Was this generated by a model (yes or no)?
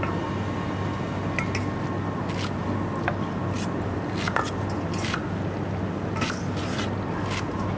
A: no